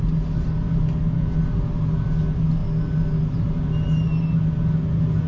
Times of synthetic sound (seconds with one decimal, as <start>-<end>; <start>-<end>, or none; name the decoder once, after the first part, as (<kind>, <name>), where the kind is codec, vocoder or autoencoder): none